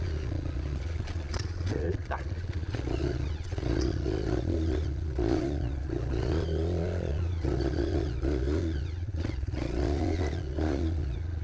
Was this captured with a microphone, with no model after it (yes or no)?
no